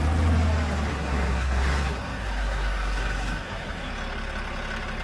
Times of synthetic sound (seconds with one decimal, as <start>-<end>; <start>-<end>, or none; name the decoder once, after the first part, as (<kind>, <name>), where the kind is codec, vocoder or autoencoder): 0.9-3.9 (codec, SNAC)